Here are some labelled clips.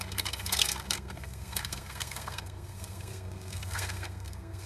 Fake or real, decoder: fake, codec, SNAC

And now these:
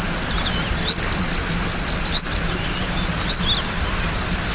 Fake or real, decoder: real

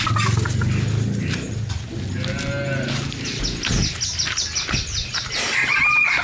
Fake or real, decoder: real